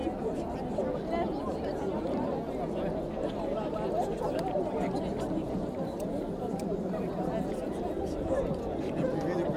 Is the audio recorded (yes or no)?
yes